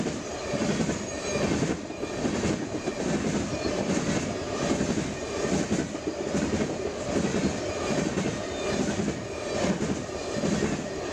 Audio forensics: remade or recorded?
recorded